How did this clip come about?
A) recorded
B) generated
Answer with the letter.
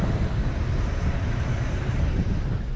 A